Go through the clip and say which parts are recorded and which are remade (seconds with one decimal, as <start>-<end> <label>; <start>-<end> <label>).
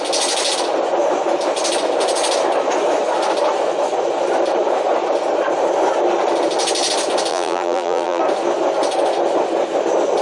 0.0-7.3 recorded; 7.3-8.2 remade; 8.2-10.2 recorded